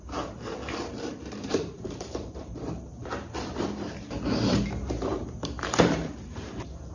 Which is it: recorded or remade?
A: remade